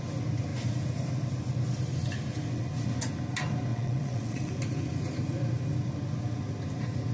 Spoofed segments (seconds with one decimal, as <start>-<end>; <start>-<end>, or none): 3.7-4.5

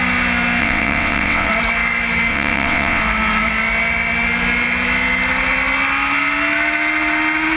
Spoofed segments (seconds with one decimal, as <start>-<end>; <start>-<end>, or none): 0.6-1.5; 2.3-3.0

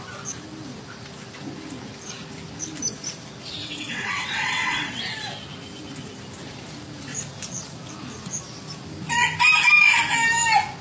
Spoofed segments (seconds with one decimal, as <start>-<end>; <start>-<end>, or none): 3.6-5.0